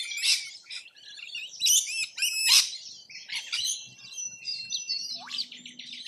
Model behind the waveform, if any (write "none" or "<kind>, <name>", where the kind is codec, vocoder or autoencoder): none